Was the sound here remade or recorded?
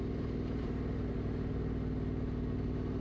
recorded